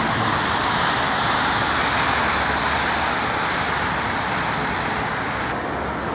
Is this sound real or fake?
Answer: real